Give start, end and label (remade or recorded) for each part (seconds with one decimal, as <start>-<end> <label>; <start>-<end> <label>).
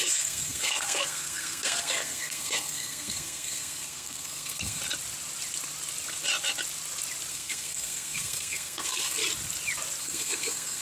0.0-4.8 remade; 4.8-7.3 recorded; 7.3-9.2 remade; 9.2-10.0 recorded; 10.0-10.8 remade